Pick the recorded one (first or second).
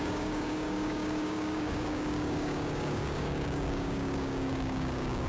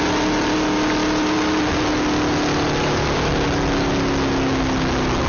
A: second